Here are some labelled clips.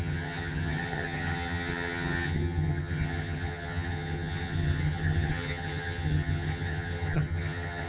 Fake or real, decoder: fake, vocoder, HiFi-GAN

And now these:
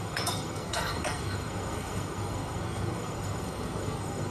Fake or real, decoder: fake, codec, SNAC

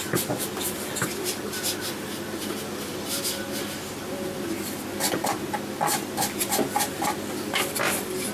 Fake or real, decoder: real